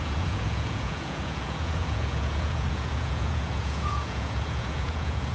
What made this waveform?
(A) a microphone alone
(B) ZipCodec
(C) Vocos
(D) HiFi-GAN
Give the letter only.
C